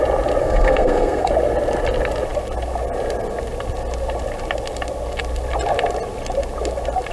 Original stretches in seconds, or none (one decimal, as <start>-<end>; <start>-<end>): 0.0-0.4; 1.3-7.1